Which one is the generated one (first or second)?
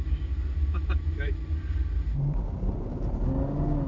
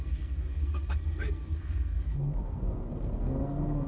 second